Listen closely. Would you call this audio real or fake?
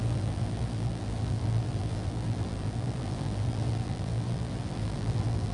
fake